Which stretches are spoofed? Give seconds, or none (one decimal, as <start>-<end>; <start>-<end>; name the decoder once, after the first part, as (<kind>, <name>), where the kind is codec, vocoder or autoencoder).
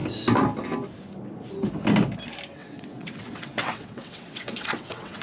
2.6-5.2 (vocoder, WaveNeXt)